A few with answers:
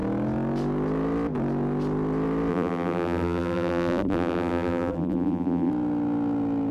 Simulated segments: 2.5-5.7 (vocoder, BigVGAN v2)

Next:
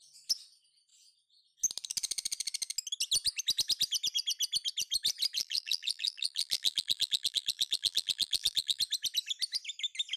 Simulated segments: 5.4-8.8 (vocoder, BigVGAN v2)

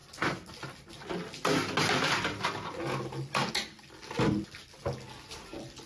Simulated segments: none